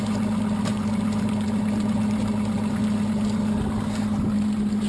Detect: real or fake real